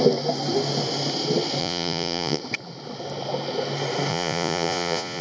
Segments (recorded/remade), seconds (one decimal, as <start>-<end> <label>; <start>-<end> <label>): 0.0-1.6 recorded; 1.6-2.4 remade; 2.4-4.1 recorded; 4.1-5.2 remade